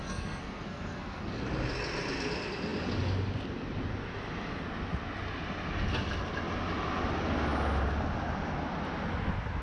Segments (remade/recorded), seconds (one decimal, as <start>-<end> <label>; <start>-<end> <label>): 0.0-1.3 remade; 1.3-9.6 recorded

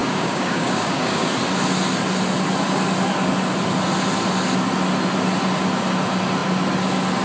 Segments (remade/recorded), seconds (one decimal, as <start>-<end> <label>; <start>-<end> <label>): 0.0-1.3 remade; 1.3-7.2 recorded

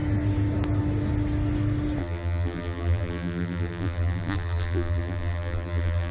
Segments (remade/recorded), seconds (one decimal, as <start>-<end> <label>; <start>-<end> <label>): 0.0-2.0 recorded; 2.0-6.1 remade

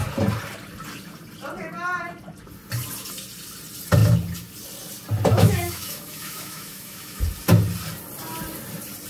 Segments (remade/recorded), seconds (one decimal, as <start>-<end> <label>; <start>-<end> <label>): 0.0-5.3 recorded; 5.3-7.2 remade; 7.2-9.1 recorded

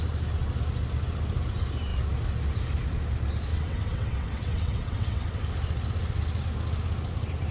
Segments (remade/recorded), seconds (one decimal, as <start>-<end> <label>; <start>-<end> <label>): 0.0-3.5 recorded; 3.5-5.4 remade; 5.4-7.5 recorded

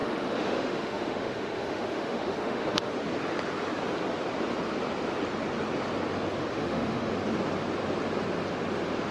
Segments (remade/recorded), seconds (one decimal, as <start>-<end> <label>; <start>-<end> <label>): 0.0-2.9 remade; 2.9-6.4 recorded; 6.4-7.1 remade; 7.1-9.1 recorded